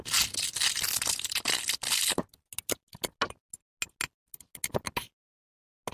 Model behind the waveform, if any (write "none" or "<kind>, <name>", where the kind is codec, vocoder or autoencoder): none